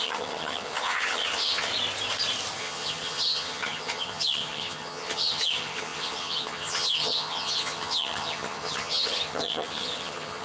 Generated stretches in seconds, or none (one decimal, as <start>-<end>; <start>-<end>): 0.0-1.7; 2.6-10.4